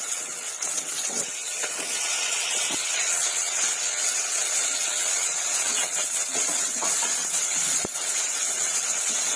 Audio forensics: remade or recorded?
remade